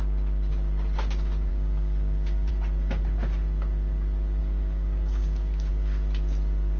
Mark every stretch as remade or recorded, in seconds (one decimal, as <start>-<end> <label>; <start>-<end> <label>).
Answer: 0.0-1.5 recorded; 1.5-2.5 remade; 2.5-4.4 recorded; 4.4-5.7 remade; 5.7-6.8 recorded